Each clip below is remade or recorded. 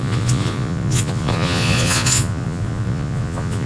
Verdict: remade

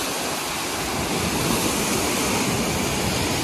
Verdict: recorded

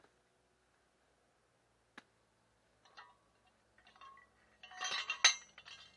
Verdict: recorded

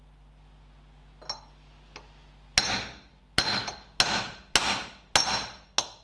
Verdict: recorded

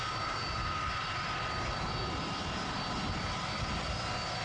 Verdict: recorded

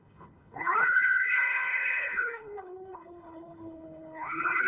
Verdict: remade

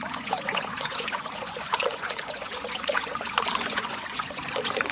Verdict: remade